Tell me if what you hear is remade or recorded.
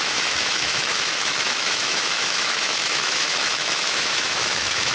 remade